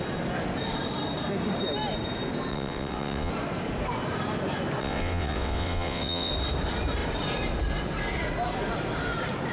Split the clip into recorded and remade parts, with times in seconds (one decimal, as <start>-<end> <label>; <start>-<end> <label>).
0.0-2.5 recorded; 2.5-3.3 remade; 3.3-4.8 recorded; 4.8-6.3 remade; 6.3-9.5 recorded